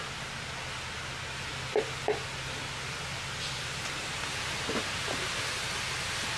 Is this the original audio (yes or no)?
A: yes